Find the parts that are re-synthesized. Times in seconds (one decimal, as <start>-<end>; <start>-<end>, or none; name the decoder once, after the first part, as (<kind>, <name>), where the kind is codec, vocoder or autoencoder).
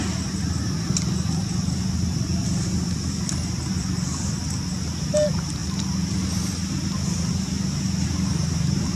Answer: none